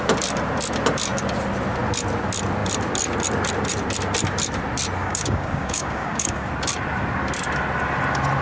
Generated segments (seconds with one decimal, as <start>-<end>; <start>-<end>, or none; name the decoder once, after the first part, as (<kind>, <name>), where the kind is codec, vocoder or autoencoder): 5.0-6.5 (codec, DAC)